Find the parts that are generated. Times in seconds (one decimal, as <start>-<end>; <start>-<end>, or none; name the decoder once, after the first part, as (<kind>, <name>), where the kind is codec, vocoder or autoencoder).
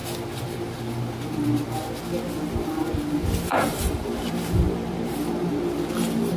3.5-5.2 (vocoder, BigVGAN v2)